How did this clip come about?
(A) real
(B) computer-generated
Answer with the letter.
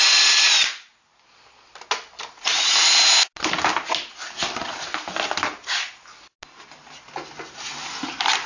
A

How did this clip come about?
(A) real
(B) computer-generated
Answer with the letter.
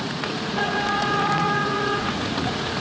B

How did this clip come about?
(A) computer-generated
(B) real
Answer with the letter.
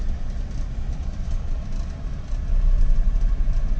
B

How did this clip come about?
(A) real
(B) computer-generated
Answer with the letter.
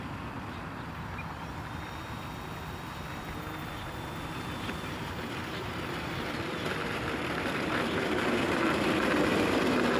B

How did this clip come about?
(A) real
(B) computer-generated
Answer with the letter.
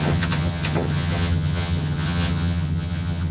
B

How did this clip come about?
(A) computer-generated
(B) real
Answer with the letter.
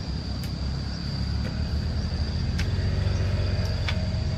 B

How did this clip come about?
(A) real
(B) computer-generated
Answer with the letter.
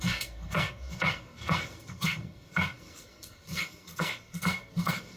B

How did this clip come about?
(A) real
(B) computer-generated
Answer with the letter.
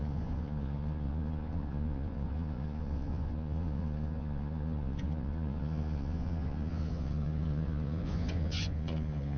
B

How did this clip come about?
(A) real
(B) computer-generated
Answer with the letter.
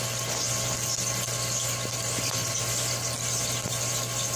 B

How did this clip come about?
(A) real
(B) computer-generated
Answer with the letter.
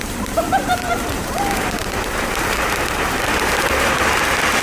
B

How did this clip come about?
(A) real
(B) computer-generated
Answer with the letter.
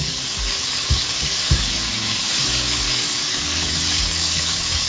B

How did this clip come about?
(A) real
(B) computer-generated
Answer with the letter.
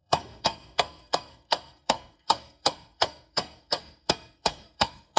B